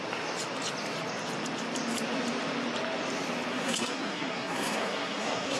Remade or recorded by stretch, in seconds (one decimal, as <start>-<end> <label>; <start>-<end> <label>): 0.0-3.5 recorded; 3.5-5.6 remade